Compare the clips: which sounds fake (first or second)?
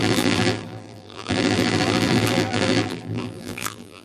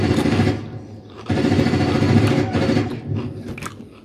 first